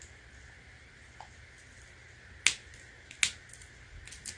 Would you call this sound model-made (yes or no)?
no